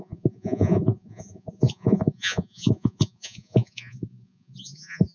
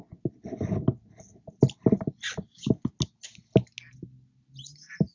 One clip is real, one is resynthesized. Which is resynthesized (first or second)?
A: first